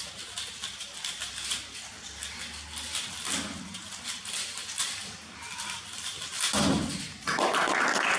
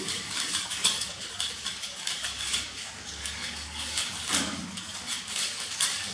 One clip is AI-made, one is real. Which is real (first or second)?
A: first